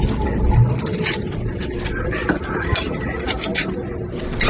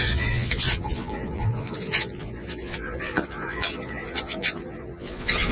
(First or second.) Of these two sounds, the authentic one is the first